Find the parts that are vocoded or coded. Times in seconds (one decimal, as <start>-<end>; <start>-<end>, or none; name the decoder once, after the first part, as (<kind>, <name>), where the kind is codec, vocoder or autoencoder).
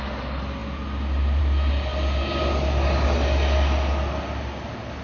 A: none